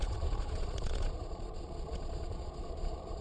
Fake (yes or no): yes